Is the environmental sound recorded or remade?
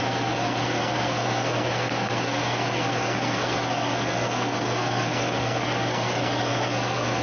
remade